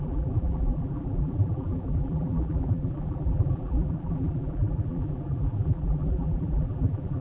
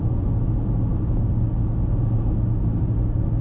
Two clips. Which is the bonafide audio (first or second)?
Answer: second